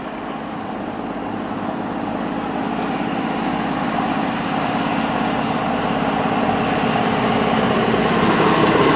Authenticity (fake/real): real